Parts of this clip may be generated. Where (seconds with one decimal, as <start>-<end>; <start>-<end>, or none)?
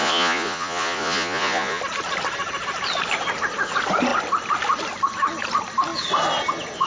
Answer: 0.0-1.8